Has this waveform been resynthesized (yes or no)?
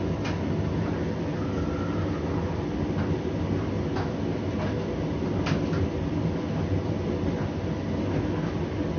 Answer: no